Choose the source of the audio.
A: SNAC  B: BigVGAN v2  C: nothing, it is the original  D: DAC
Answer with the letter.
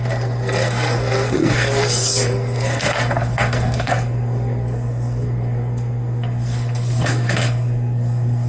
A